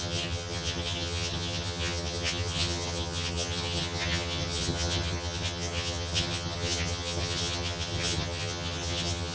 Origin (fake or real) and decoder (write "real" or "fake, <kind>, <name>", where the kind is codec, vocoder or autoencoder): fake, vocoder, HiFi-GAN